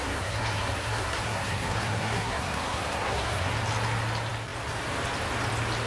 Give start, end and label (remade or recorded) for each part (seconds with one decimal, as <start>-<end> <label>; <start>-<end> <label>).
0.0-3.5 remade; 3.5-5.9 recorded